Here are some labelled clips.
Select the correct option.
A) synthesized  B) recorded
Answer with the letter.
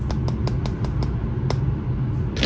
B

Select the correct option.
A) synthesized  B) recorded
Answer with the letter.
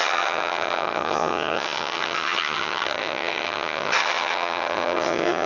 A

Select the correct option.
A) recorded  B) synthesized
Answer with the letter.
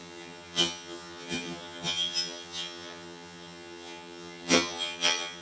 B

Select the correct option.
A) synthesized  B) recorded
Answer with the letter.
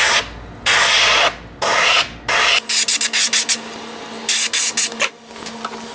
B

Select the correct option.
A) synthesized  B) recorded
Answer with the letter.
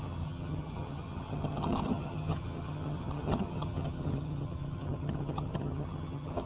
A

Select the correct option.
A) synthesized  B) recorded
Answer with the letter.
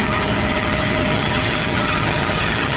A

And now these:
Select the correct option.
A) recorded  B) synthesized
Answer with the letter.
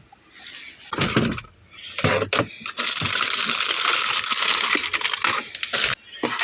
A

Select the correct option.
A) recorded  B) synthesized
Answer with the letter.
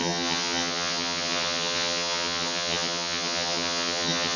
B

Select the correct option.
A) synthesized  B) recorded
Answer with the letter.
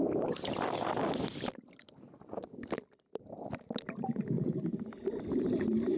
B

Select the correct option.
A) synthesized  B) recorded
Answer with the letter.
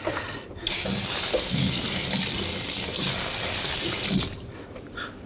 B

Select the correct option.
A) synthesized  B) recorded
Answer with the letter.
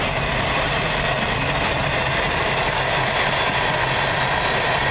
B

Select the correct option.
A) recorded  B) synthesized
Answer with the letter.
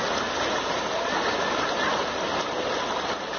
A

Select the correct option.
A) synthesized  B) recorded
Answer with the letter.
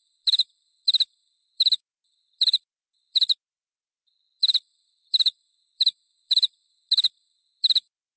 B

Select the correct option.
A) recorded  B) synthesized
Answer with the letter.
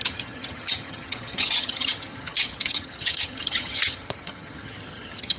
B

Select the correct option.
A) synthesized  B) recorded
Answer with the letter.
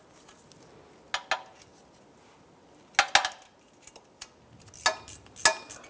B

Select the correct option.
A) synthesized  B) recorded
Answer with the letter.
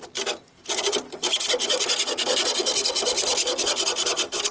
B